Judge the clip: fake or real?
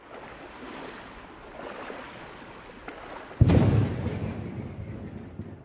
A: real